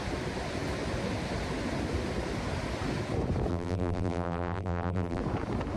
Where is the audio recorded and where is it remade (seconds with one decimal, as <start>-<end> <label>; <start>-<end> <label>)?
0.0-3.5 recorded; 3.5-5.2 remade; 5.2-5.8 recorded